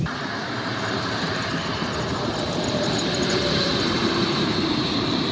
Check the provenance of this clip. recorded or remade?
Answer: remade